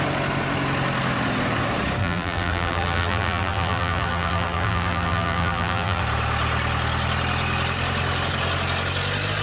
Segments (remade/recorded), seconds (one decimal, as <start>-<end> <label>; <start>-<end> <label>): 0.0-2.0 recorded; 2.0-6.0 remade; 6.0-9.4 recorded